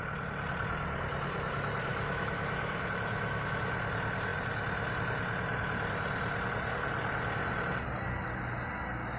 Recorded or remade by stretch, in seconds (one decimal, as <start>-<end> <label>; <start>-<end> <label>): 0.0-1.9 recorded; 1.9-3.7 remade; 3.7-9.2 recorded